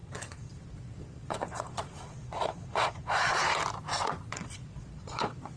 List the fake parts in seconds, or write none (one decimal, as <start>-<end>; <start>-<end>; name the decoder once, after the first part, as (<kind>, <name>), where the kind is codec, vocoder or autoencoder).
0.0-3.4 (vocoder, Vocos); 4.3-5.6